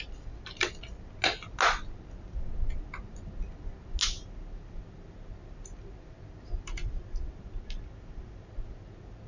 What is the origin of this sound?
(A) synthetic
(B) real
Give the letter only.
B